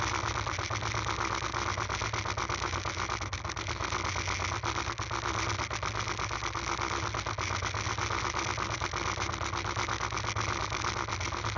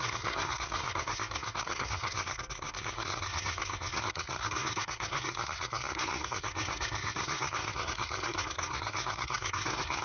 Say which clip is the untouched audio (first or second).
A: first